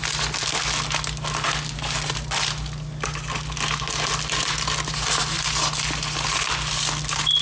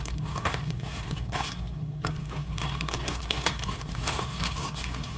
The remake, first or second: second